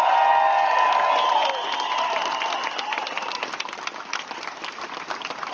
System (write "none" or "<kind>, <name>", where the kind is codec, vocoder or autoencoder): none